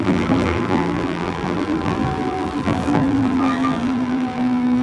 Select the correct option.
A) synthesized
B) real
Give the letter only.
A